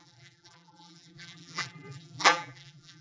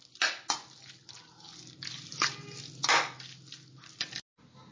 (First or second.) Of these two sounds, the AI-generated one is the first